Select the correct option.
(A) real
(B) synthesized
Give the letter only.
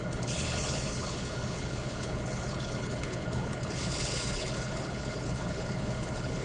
B